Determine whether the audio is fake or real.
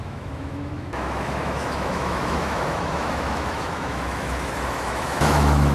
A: fake